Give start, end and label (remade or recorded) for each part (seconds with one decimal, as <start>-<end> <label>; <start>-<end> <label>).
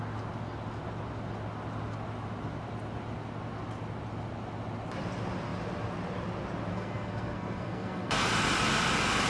0.0-6.7 recorded; 6.7-8.3 remade; 8.3-9.3 recorded